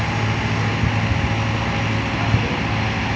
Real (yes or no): yes